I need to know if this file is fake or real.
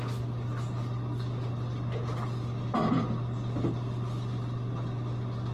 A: real